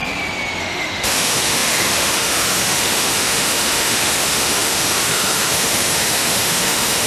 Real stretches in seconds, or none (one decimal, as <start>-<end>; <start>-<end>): 0.0-0.6